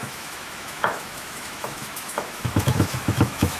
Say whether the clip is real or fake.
fake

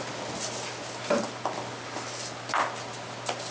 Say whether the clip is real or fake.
real